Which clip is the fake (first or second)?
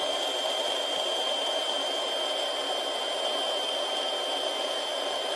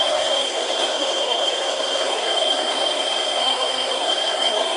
second